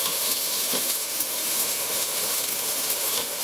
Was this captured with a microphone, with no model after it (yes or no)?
no